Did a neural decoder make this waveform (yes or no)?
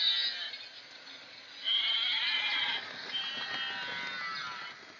no